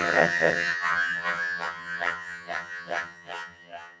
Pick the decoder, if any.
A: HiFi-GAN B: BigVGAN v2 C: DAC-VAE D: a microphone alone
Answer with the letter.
A